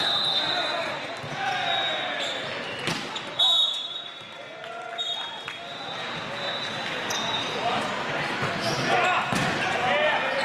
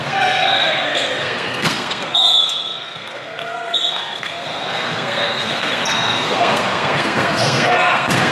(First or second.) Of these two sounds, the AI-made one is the second